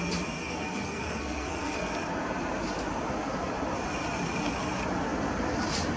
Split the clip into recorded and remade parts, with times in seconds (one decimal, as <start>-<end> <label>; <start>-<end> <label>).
0.0-0.4 recorded; 0.4-1.9 remade; 1.9-6.0 recorded